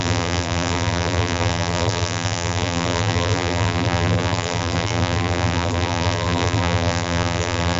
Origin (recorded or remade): remade